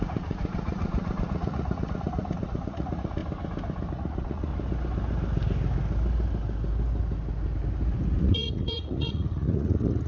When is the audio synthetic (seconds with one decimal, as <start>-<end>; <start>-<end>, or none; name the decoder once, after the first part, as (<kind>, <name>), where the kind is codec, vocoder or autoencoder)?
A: 0.0-3.2 (vocoder, Vocos); 3.9-4.5; 8.2-10.1